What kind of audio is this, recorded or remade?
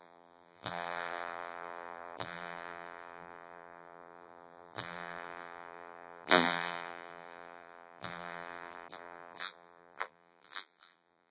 remade